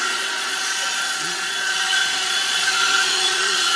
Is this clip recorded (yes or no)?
no